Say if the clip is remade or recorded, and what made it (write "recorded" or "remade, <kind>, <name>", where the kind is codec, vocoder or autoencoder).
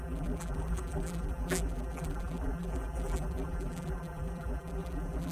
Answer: remade, vocoder, BigVGAN v2